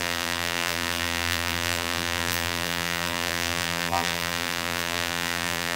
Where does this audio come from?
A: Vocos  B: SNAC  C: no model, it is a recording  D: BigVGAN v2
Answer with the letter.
D